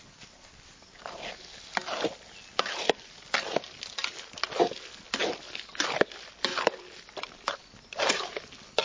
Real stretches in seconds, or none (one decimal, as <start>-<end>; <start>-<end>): 0.0-6.5; 7.6-8.8